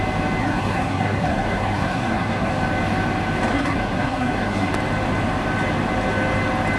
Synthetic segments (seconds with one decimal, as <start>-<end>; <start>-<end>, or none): 0.4-2.5; 3.5-4.7

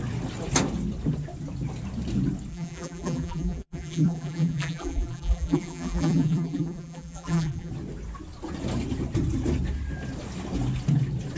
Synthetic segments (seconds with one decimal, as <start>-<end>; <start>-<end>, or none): 2.5-7.7

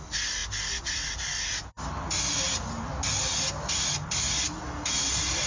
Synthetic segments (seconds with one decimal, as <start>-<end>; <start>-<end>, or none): none

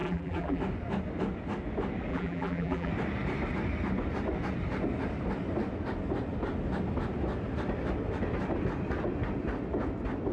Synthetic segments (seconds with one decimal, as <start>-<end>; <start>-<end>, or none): 0.0-0.6; 2.1-2.9